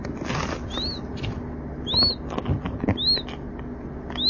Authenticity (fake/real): real